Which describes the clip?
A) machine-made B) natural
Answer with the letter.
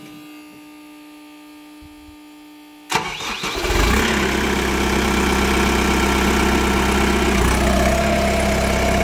B